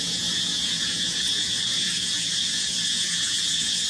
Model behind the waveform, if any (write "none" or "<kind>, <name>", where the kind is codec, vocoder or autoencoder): vocoder, Vocos